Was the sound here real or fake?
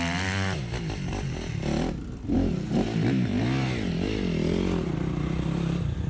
real